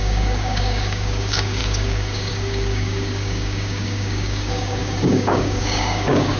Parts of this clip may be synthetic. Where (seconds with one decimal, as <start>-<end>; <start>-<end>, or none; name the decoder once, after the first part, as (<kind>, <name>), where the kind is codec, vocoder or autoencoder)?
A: 0.0-6.4 (codec, DAC)